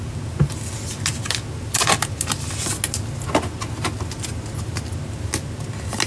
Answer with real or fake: real